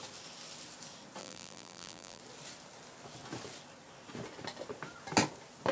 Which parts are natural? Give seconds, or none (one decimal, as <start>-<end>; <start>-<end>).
0.0-1.2; 2.2-5.7